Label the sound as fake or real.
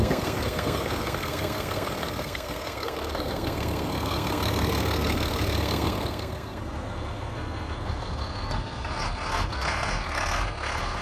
fake